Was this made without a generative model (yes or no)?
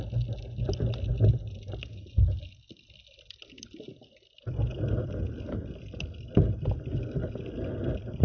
yes